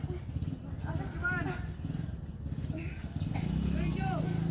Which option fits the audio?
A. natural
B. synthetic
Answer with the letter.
A